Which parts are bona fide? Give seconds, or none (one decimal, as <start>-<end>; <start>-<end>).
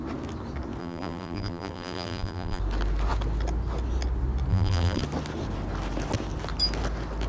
0.0-0.8; 2.6-4.5; 5.0-7.3